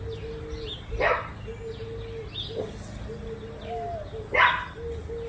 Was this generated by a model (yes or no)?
no